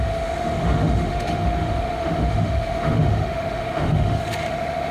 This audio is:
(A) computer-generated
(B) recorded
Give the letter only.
A